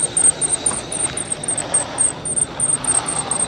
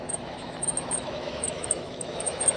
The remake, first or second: second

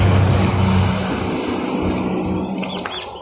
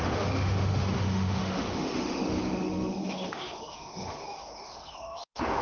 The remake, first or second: second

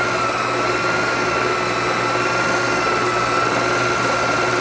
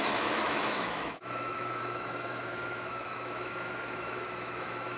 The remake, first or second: second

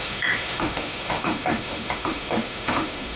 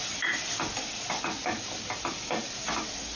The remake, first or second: first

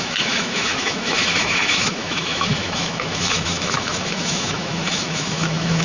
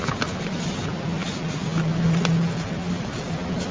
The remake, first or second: first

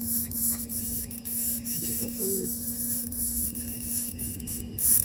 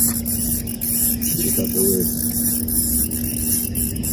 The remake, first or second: first